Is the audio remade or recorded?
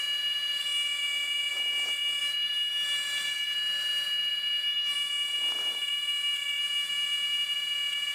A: remade